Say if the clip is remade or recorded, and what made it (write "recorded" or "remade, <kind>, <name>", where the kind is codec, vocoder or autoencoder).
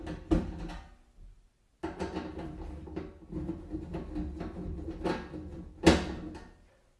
recorded